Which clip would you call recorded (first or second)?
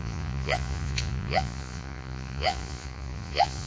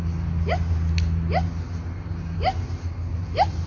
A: second